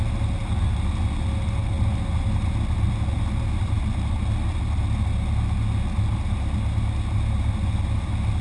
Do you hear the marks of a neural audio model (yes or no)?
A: no